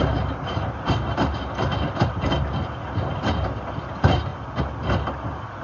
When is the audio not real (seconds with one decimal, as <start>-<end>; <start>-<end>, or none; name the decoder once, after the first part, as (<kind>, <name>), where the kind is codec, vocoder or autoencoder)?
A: 0.0-1.7 (vocoder, BigVGAN v2); 2.9-4.3